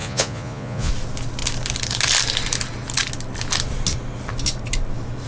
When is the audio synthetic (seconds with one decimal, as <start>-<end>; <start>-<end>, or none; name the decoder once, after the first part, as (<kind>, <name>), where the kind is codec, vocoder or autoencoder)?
0.0-0.9 (vocoder, Vocos)